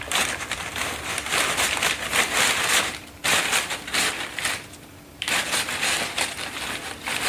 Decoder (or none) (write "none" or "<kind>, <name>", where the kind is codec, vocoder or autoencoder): vocoder, BigVGAN v2